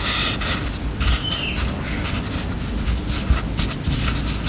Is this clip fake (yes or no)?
no